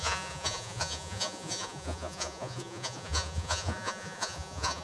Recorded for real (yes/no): no